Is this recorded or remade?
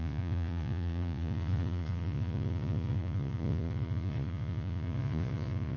remade